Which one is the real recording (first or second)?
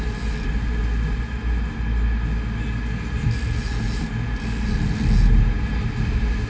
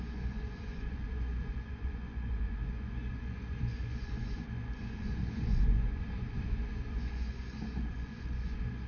first